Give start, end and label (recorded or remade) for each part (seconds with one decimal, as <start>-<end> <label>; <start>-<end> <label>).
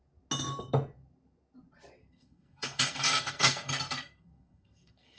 0.0-2.0 recorded; 2.0-5.2 remade